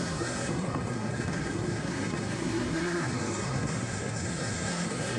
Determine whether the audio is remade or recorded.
remade